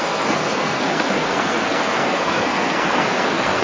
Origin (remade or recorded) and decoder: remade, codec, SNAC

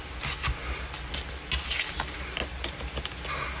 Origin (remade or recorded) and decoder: recorded